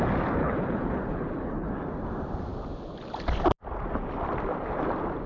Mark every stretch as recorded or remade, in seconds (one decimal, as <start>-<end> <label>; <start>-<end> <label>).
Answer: 0.0-0.4 recorded; 0.4-1.7 remade; 1.7-5.3 recorded